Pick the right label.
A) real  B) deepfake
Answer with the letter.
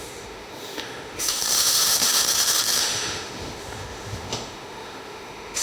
B